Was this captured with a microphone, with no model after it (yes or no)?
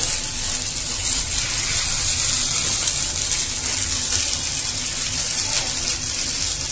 yes